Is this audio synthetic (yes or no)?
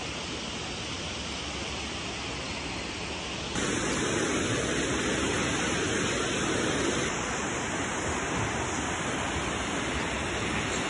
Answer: no